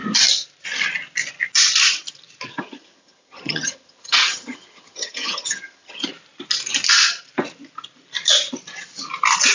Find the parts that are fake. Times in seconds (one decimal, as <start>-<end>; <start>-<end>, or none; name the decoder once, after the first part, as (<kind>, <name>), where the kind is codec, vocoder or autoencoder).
2.5-6.1 (vocoder, HiFi-GAN)